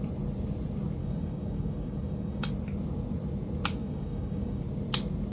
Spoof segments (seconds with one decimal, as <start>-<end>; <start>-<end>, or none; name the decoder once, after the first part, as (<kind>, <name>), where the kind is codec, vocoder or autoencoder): 1.0-2.5 (codec, DAC); 3.8-4.6